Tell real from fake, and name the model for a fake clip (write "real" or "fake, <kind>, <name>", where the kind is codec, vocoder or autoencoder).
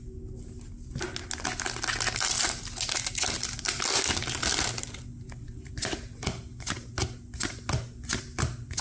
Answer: real